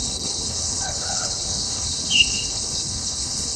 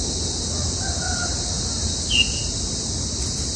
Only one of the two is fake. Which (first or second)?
first